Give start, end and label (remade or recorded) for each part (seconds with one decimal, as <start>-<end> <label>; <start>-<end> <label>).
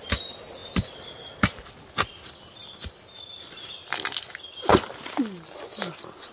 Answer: 0.0-6.3 recorded